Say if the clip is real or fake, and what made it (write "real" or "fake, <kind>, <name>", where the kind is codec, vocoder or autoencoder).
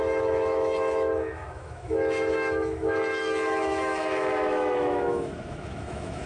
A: fake, autoencoder, DAC-VAE